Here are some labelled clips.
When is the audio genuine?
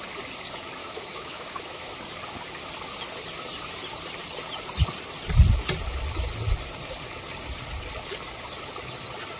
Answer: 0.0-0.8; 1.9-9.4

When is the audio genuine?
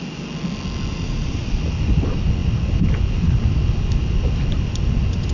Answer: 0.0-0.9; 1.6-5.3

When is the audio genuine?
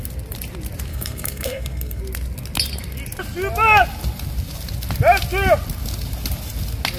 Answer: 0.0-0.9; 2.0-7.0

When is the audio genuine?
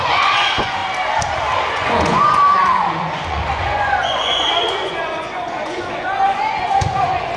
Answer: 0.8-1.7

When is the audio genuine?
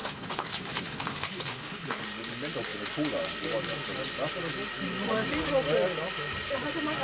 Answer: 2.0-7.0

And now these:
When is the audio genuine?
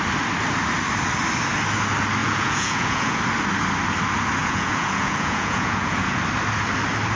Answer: 0.0-2.2; 3.2-4.4; 6.2-7.2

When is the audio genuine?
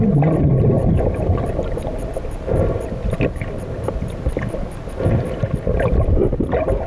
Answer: 0.0-0.8; 4.9-6.9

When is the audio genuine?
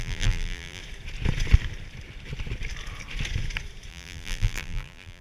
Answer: 0.8-3.9